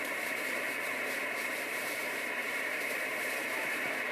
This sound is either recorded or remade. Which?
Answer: remade